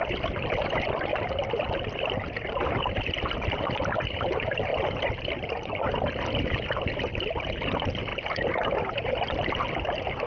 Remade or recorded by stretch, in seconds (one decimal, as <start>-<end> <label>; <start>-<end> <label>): 0.0-1.1 remade; 1.1-2.8 recorded; 2.8-4.7 remade; 4.7-7.1 recorded; 7.1-8.1 remade; 8.1-9.1 recorded; 9.1-10.3 remade